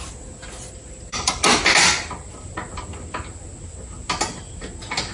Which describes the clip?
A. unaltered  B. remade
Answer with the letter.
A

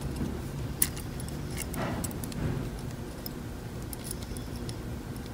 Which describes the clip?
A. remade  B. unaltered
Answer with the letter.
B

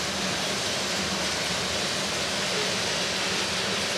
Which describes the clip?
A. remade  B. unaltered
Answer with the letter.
B